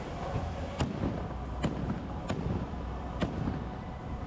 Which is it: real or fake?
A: fake